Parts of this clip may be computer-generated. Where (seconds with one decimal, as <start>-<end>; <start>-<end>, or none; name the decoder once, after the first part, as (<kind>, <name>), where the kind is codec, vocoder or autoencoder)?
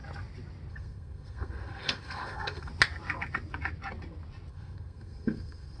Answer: 0.7-2.7 (codec, SNAC); 4.5-5.8